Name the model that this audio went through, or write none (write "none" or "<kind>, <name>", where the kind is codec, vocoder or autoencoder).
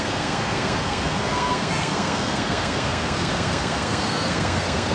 codec, SNAC